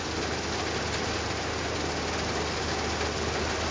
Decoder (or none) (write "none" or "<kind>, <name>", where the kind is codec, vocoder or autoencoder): none